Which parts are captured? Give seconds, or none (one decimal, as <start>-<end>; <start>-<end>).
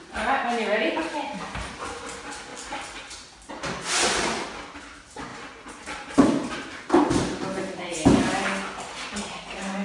0.0-5.3; 7.1-9.8